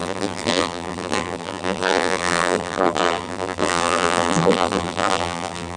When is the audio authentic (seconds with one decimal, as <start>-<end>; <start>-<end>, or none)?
none